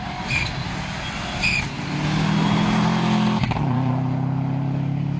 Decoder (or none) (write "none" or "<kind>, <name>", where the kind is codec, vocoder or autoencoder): none